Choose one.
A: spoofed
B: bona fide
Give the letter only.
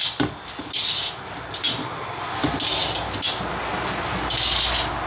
B